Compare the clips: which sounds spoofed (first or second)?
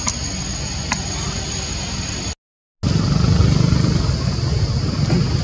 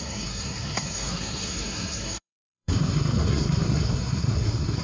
second